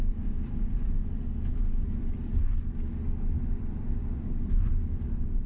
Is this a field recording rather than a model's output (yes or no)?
yes